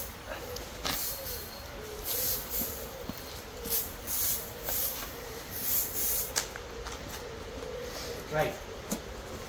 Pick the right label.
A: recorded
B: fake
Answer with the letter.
A